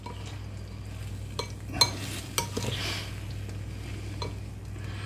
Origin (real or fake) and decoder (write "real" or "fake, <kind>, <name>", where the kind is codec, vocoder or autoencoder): real